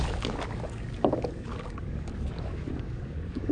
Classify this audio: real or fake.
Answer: fake